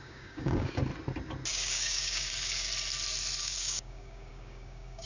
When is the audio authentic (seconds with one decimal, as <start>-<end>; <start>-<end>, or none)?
0.8-1.5; 2.7-3.4

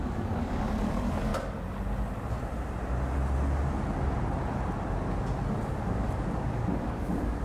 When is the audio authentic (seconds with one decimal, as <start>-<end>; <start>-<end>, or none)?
1.3-5.7

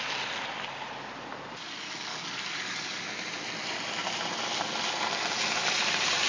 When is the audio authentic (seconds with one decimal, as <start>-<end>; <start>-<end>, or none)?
0.0-2.1; 3.0-6.3

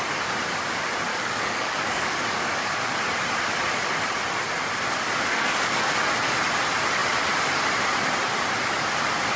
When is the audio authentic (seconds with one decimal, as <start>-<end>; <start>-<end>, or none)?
0.0-1.1; 2.8-5.3; 5.9-9.4

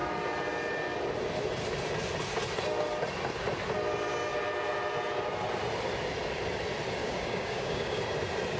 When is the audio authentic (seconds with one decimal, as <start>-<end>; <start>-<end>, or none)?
0.0-7.0; 8.0-8.6

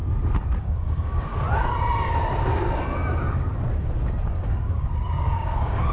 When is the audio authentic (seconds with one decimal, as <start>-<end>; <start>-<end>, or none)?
0.0-0.6; 1.3-4.3

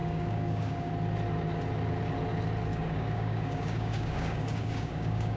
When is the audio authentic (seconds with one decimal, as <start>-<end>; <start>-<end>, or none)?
0.9-2.7

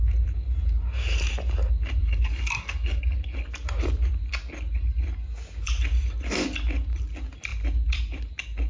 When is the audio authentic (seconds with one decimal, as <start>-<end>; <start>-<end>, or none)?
0.0-2.0; 3.0-8.7